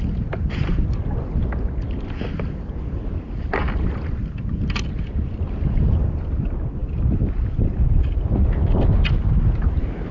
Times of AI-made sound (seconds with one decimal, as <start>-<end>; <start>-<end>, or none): none